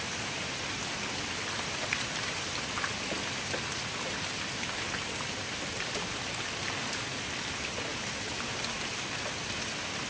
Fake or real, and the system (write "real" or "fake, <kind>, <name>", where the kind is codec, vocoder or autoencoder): real